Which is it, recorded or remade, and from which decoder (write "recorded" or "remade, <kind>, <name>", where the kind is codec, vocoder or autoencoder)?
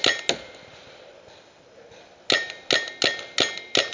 recorded